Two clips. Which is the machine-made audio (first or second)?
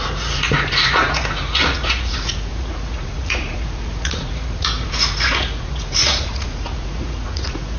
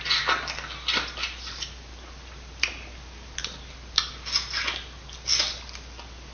first